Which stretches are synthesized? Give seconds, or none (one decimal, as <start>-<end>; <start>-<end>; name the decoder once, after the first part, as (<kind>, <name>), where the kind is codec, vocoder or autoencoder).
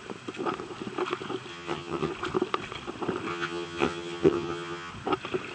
1.5-2.1 (vocoder, HiFi-GAN); 3.3-4.9